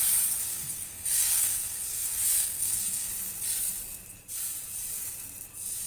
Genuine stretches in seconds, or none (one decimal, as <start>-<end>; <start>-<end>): 0.0-0.5; 3.1-5.9